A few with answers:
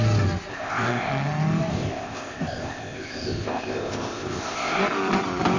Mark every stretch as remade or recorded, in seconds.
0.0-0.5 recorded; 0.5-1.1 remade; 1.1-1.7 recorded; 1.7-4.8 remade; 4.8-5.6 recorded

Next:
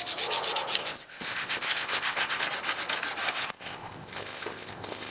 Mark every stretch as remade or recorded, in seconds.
0.0-0.8 recorded; 0.8-2.4 remade; 2.4-3.3 recorded; 3.3-5.1 remade

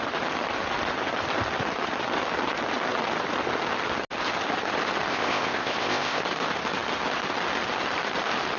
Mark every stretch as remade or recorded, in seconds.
0.0-5.1 recorded; 5.1-6.2 remade; 6.2-8.6 recorded

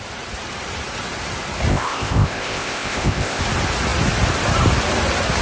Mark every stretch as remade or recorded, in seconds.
0.0-1.7 recorded; 1.7-3.4 remade; 3.4-5.4 recorded

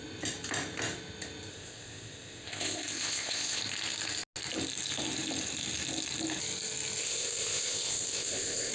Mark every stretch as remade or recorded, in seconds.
0.0-1.5 recorded; 1.5-3.6 remade; 3.6-7.0 recorded; 7.0-8.7 remade